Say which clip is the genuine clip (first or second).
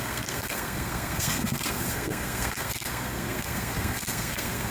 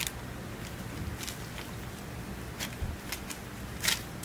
second